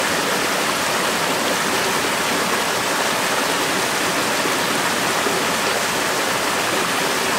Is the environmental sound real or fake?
real